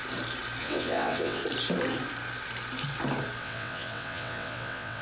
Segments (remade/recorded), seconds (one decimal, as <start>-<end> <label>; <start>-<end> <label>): 0.0-0.6 recorded; 0.6-1.4 remade; 1.4-3.4 recorded; 3.4-5.0 remade